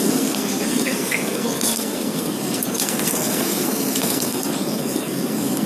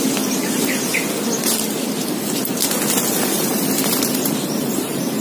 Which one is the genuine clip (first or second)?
second